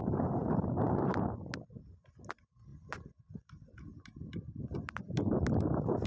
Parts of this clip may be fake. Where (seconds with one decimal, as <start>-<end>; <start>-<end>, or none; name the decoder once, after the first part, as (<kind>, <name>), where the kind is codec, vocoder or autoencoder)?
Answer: 2.7-5.0 (vocoder, BigVGAN v2)

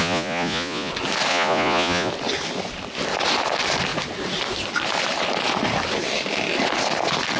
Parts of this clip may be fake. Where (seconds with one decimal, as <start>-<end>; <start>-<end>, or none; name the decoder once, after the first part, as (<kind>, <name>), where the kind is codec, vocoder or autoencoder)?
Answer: 0.0-0.9 (vocoder, Vocos); 1.3-2.1